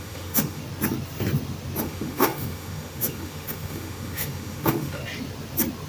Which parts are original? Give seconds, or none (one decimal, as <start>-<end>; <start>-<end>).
0.6-1.8; 5.0-5.9